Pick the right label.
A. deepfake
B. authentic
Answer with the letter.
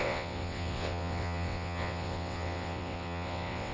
A